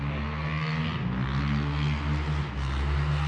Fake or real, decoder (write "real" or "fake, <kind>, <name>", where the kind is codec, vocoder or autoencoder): real